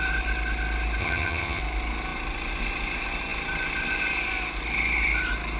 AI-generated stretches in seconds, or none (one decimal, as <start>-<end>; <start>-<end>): 1.0-1.6

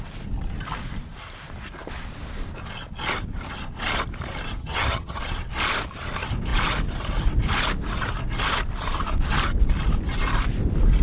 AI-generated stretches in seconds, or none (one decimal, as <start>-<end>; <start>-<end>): 4.6-5.2

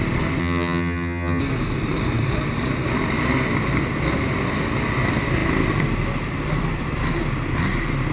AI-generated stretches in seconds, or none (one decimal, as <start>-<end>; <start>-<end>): 0.4-1.4